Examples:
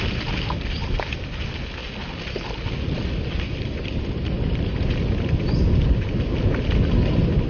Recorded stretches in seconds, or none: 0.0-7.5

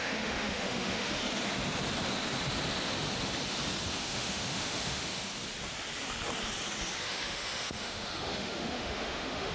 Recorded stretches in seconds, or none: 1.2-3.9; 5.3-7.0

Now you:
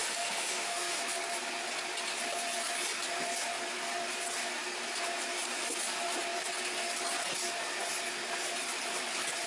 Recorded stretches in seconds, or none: 1.0-9.5